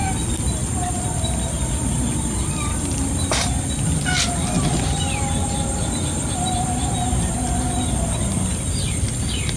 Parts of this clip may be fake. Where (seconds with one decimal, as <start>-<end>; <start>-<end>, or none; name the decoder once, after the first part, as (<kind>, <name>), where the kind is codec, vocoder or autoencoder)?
none